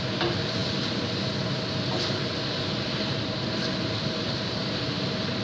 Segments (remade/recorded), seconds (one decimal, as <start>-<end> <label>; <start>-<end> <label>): 0.0-0.6 remade; 0.6-1.2 recorded; 1.2-5.4 remade